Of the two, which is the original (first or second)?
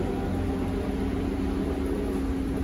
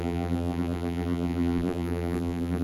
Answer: first